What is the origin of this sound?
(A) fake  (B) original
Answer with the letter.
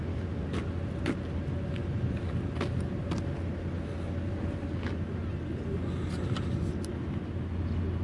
B